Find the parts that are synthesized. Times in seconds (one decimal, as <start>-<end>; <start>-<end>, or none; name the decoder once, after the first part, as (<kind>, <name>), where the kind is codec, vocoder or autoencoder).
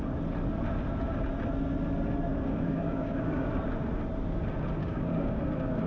2.3-3.5 (codec, DAC); 4.8-5.4